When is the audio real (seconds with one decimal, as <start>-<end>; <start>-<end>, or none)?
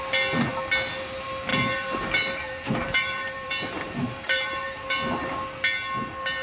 0.0-1.5; 5.3-6.4